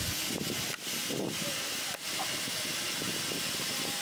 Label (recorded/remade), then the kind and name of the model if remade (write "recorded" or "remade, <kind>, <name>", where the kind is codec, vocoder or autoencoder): recorded